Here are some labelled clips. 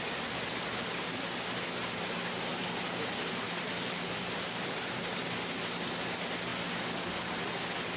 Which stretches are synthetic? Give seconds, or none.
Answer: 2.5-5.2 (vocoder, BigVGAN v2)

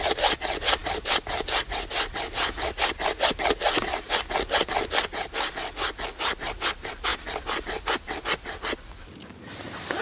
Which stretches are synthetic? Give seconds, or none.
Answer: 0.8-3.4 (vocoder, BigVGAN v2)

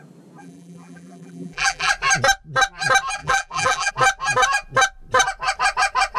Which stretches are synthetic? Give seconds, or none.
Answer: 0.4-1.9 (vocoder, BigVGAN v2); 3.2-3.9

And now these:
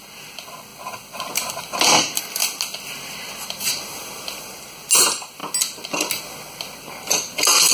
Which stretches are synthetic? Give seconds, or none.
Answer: none

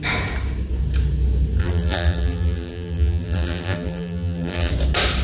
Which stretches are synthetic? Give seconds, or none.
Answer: 1.6-4.7 (vocoder, BigVGAN v2)

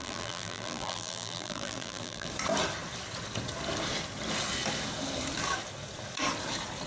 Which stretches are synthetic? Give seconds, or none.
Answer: 0.0-2.3 (vocoder, BigVGAN v2)

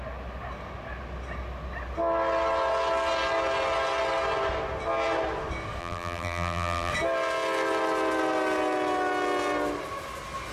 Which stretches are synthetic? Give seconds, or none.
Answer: 5.8-6.9 (vocoder, BigVGAN v2)